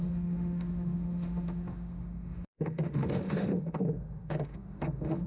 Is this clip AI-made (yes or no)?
yes